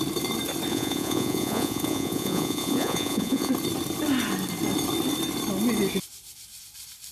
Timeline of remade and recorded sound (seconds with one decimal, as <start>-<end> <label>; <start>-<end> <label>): 0.0-0.7 recorded; 0.7-3.5 remade; 3.5-7.1 recorded